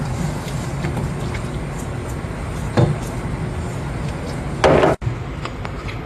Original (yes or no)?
yes